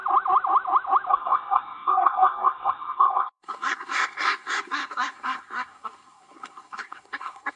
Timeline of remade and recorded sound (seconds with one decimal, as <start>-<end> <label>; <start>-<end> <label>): 0.0-1.1 recorded; 1.1-7.6 remade